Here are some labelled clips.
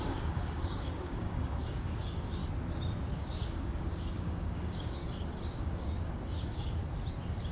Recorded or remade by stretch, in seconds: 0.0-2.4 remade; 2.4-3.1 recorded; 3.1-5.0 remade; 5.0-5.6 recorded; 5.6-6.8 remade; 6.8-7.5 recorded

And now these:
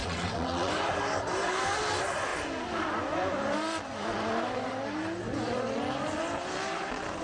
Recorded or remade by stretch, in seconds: 0.0-0.7 remade; 0.7-7.2 recorded